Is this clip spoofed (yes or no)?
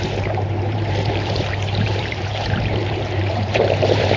yes